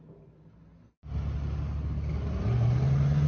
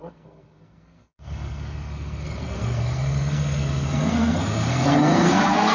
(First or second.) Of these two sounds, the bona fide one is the first